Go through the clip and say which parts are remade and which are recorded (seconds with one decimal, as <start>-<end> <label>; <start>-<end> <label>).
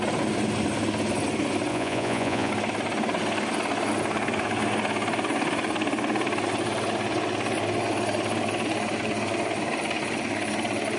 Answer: 0.0-1.7 recorded; 1.7-2.5 remade; 2.5-11.0 recorded